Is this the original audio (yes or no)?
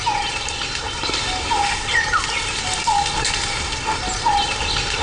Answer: yes